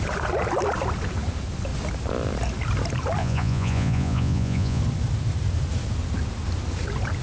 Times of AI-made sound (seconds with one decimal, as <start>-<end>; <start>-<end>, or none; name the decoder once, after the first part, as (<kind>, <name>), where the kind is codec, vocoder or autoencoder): 3.2-4.8 (vocoder, Vocos)